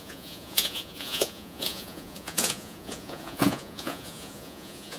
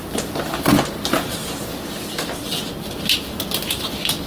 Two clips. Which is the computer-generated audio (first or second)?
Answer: first